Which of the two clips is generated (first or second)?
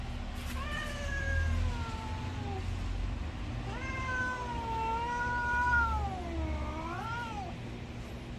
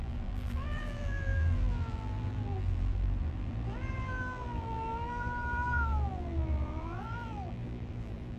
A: second